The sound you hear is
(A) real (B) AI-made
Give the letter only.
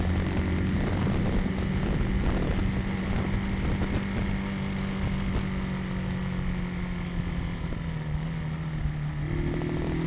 A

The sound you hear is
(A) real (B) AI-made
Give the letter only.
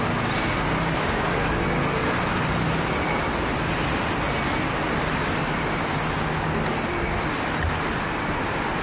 A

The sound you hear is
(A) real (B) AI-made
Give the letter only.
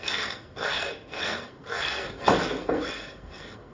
B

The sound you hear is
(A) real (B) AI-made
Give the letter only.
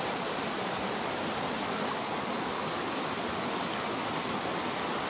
A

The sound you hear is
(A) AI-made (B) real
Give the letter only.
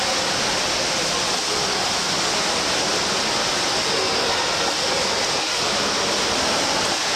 B